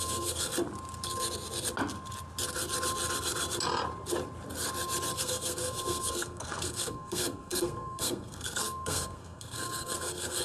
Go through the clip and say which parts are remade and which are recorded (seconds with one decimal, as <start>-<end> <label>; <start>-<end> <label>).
0.0-0.5 remade; 0.5-5.2 recorded; 5.2-10.4 remade